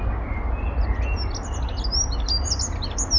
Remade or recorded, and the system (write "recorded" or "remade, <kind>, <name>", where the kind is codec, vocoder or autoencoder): recorded